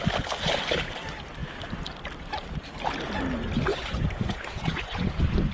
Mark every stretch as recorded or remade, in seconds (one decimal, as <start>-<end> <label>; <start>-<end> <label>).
0.0-3.7 recorded; 3.7-5.5 remade